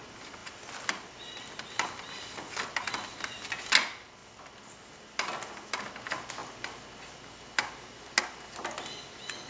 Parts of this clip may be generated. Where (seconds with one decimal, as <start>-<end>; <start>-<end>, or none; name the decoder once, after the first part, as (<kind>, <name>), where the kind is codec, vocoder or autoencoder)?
none